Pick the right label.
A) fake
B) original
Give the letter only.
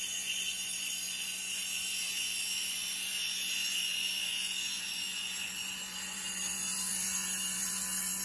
A